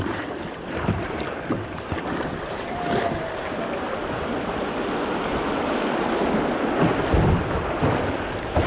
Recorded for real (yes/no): no